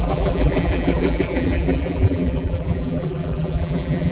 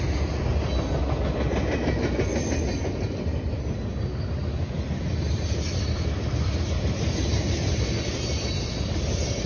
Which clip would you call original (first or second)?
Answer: second